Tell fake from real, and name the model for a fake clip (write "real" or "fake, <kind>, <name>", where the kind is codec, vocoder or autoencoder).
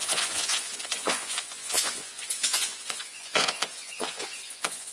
fake, vocoder, Vocos